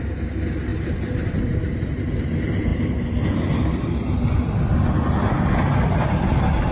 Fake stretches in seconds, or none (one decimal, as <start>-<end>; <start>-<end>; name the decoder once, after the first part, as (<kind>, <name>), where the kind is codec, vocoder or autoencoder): none